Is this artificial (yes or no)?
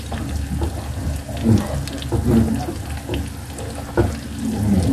no